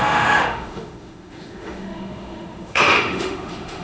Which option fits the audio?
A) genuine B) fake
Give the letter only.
B